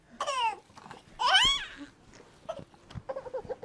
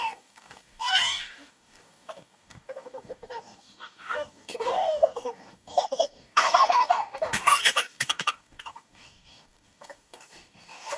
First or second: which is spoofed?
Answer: second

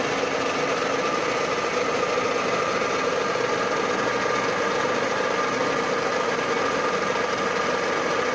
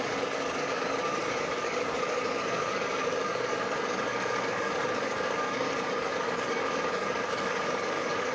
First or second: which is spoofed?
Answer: second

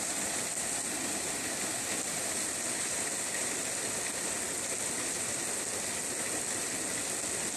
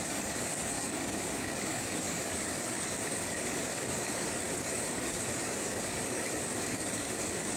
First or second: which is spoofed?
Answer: second